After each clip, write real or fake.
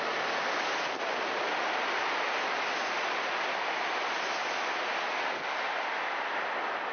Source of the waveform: real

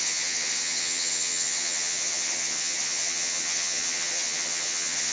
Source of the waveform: fake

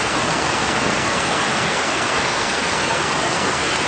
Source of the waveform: fake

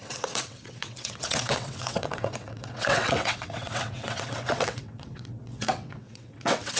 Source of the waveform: fake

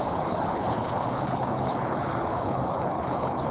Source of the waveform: fake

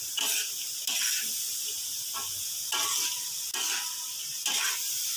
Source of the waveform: real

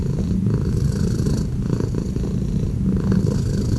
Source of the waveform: fake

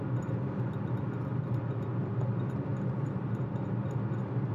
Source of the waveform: real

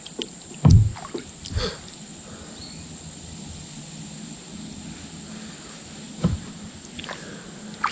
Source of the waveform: real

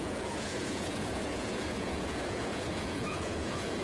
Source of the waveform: fake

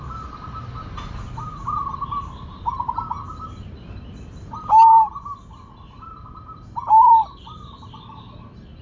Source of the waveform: real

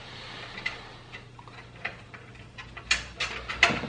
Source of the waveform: real